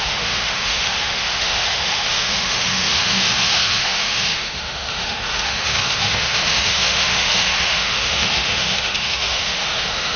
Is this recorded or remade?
remade